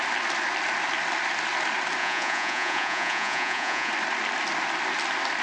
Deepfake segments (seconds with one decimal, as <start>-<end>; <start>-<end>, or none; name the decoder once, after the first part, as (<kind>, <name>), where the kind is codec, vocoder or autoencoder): 2.0-3.9 (vocoder, Vocos)